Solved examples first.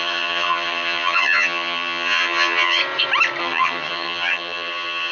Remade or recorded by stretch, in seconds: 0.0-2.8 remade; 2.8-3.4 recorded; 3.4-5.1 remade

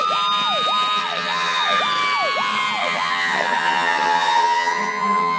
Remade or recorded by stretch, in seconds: 0.0-1.0 recorded; 1.0-1.8 remade; 1.8-2.8 recorded; 2.8-5.4 remade

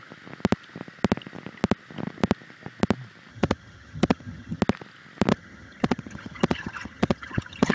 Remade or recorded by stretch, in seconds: 0.0-3.3 recorded; 3.3-4.6 remade; 4.6-5.3 recorded; 5.3-7.7 remade

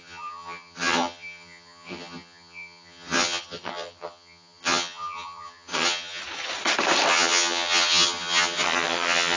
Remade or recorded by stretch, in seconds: 0.0-6.2 remade; 6.2-7.1 recorded; 7.1-9.4 remade

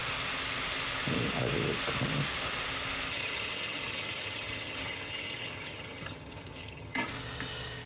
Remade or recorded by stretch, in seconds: 0.0-3.1 recorded; 3.1-7.1 remade; 7.1-7.9 recorded

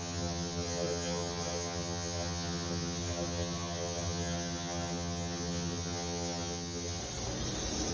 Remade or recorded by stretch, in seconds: 0.0-7.0 remade; 7.0-7.9 recorded

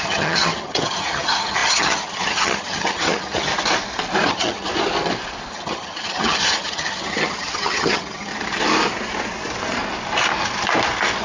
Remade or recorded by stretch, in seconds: 0.0-3.5 remade; 3.5-4.3 recorded; 4.3-4.7 remade; 4.7-5.5 recorded; 5.5-8.3 remade; 8.3-11.2 recorded